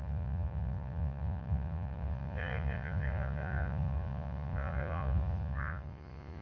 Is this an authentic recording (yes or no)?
no